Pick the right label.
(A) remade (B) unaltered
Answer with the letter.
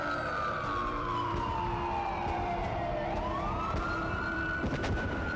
A